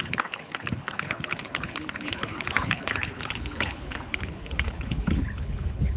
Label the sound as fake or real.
fake